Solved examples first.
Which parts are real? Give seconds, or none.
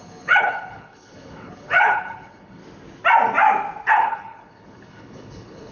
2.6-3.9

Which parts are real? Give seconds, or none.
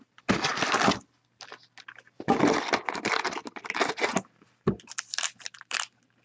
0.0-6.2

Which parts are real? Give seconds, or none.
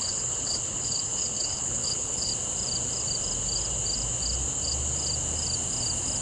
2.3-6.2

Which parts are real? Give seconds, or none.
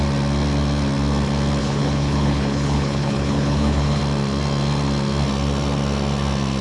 0.0-1.6; 4.0-6.6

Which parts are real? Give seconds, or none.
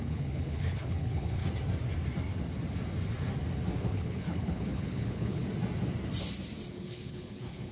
1.4-3.8; 5.4-6.7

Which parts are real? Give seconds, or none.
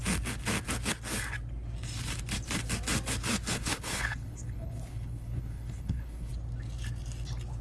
0.0-3.5; 6.3-7.6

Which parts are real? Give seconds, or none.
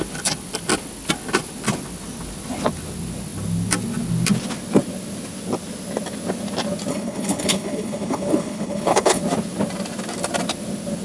0.0-6.9; 9.2-11.0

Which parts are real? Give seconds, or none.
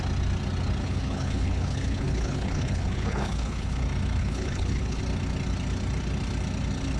0.0-0.8; 3.8-4.2; 5.0-7.0